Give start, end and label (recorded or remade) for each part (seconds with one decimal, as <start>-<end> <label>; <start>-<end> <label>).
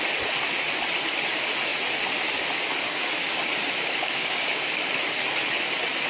0.0-2.8 recorded; 2.8-4.8 remade; 4.8-6.1 recorded